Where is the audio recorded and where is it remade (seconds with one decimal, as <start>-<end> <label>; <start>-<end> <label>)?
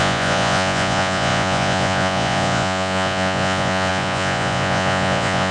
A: 0.0-5.5 remade